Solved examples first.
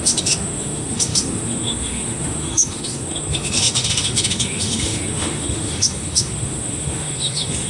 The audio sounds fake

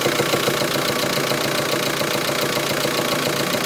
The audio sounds real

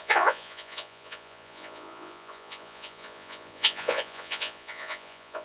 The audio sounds fake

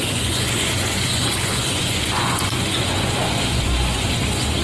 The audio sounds fake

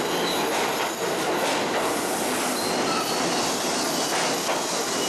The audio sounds real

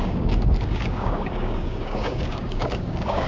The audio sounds fake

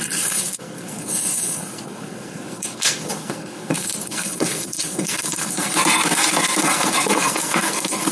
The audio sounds fake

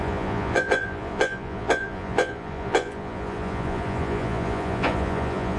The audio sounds fake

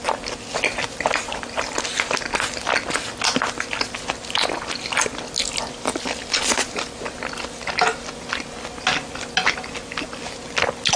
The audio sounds real